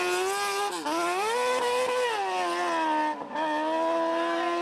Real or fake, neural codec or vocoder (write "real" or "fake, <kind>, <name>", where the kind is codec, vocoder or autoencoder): real